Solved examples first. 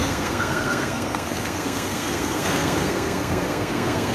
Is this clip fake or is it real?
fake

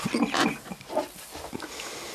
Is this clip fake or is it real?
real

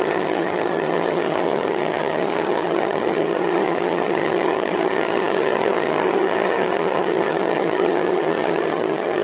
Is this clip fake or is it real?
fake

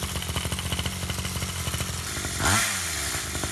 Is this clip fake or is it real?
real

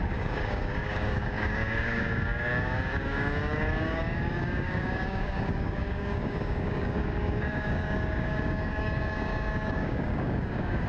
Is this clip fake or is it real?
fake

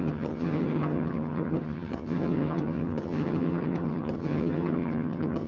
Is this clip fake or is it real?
fake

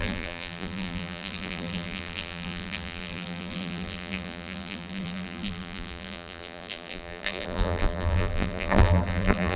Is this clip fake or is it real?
fake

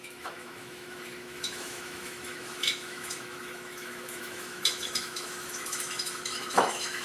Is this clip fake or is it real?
fake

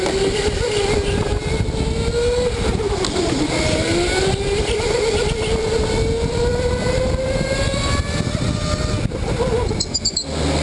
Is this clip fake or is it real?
real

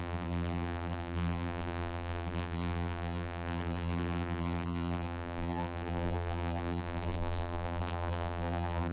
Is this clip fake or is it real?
fake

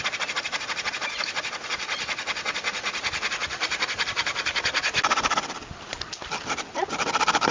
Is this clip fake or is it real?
real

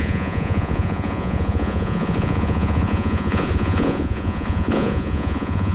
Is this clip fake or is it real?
fake